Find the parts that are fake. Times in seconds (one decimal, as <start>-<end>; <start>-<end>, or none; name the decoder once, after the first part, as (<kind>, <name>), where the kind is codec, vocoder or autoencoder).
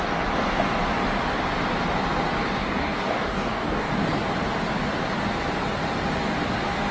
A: 2.6-3.9 (codec, DAC)